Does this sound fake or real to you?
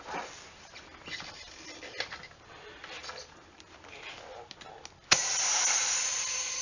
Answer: real